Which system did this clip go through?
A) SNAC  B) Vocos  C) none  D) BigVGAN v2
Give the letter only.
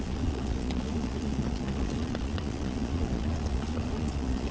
B